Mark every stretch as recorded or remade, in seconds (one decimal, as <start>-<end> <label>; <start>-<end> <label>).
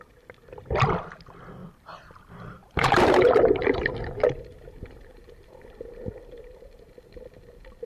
0.0-1.6 recorded; 1.6-5.7 remade; 5.7-7.9 recorded